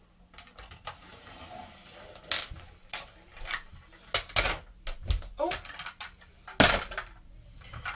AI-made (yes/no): no